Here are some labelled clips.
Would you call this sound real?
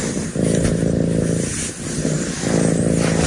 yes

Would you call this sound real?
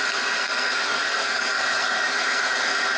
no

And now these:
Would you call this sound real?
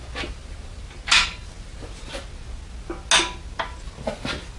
yes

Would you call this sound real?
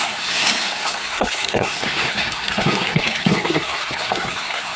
no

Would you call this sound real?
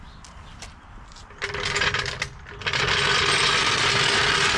yes